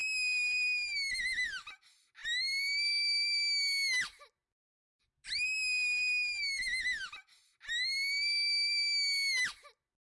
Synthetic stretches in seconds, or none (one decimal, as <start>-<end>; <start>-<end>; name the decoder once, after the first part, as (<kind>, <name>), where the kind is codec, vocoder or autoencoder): none